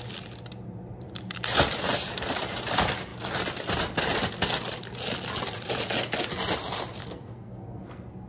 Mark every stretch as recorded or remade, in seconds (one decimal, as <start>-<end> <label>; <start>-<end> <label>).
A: 0.0-7.0 recorded; 7.0-8.3 remade